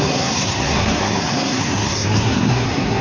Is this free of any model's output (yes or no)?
no